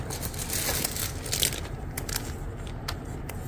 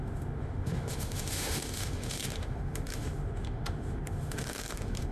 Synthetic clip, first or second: second